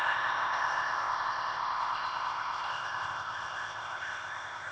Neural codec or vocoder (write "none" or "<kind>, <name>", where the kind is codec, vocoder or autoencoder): codec, ZipCodec